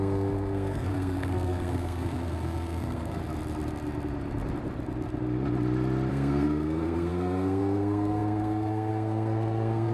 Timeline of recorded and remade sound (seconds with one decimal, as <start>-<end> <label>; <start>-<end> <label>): 0.0-3.2 remade; 3.2-6.1 recorded; 6.1-9.9 remade